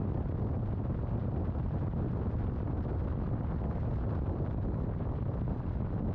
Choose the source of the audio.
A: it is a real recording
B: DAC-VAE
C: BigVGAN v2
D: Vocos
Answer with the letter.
A